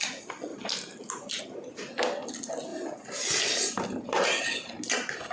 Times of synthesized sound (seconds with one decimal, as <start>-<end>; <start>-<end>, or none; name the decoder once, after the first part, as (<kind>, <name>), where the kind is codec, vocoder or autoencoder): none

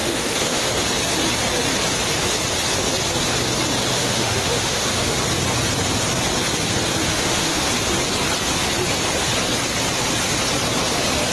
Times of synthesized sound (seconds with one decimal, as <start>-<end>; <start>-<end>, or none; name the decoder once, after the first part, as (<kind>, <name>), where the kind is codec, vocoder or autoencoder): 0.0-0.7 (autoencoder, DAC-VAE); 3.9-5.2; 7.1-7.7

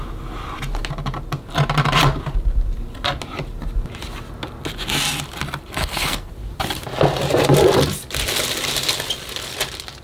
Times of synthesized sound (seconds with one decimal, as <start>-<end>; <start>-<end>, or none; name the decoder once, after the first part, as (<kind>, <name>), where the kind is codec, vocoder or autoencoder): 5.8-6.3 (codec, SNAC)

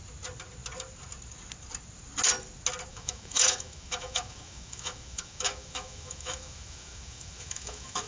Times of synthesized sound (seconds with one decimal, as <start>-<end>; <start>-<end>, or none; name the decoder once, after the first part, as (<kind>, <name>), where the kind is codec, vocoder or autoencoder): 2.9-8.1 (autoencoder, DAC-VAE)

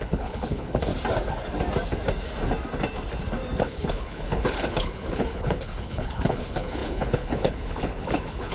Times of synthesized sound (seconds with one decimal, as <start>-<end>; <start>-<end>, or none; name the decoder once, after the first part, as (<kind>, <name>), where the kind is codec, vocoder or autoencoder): 0.0-0.9 (codec, HILCodec); 3.6-8.5